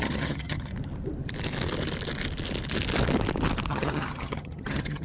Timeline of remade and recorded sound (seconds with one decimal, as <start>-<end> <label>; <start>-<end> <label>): 0.0-0.7 remade; 0.7-3.7 recorded; 3.7-5.0 remade

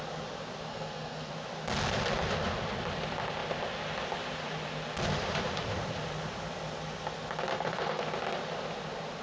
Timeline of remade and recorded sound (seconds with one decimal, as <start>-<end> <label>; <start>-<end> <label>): 0.0-0.7 recorded; 0.7-1.3 remade; 1.3-7.5 recorded; 7.5-8.0 remade; 8.0-9.2 recorded